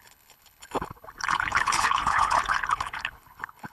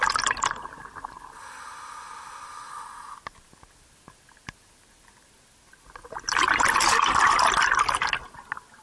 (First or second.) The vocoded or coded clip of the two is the first